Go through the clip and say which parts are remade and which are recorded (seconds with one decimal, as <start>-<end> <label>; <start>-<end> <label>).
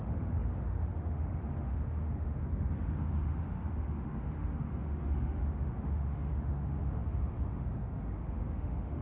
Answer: 0.0-9.0 remade